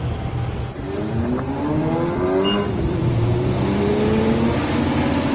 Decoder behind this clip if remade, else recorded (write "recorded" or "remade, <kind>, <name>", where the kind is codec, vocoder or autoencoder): recorded